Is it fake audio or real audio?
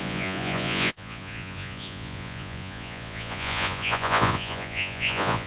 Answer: fake